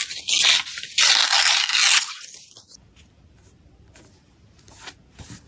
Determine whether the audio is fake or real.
real